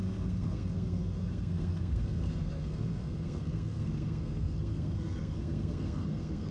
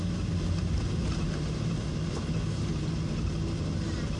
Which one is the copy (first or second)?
first